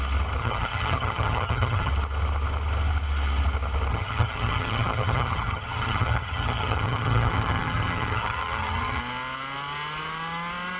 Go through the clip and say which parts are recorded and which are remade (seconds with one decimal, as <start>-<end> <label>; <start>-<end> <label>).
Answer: 0.0-0.4 recorded; 0.4-1.9 remade; 1.9-3.9 recorded; 3.9-9.0 remade; 9.0-10.8 recorded